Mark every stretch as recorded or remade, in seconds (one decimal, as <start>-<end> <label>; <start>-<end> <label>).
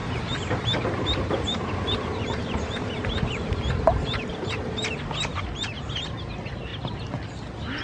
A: 0.0-4.7 remade; 4.7-7.8 recorded